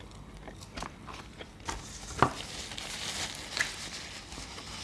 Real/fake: real